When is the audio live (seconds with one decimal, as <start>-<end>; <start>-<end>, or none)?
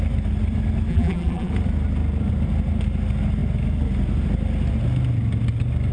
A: 0.0-0.9; 1.5-5.9